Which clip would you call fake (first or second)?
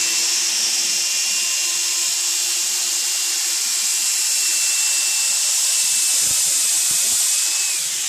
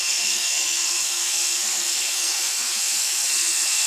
second